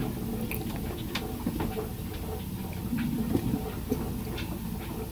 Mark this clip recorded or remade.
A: recorded